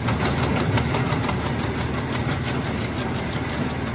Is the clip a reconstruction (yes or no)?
no